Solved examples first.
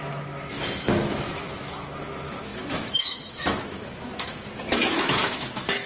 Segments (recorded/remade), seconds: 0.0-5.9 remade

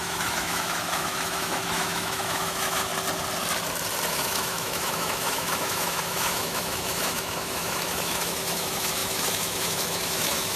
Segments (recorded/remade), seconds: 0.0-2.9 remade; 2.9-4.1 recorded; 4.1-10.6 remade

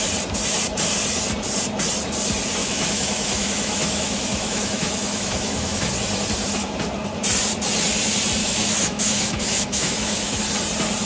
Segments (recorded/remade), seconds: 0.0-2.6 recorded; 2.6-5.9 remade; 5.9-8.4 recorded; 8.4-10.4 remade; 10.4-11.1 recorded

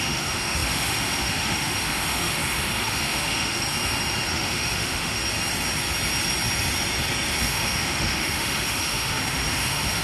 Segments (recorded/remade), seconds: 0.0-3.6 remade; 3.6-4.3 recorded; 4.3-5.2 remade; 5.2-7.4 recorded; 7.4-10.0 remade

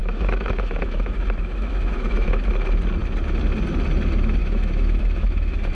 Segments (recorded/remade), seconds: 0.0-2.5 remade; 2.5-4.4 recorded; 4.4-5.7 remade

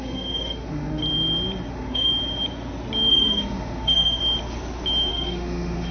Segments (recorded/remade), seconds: 0.0-1.0 remade; 1.0-1.7 recorded; 1.7-2.1 remade; 2.1-3.1 recorded; 3.1-4.2 remade; 4.2-5.1 recorded; 5.1-5.9 remade